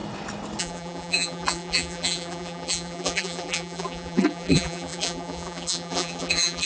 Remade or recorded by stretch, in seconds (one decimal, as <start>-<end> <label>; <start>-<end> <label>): 0.0-0.6 recorded; 0.6-6.7 remade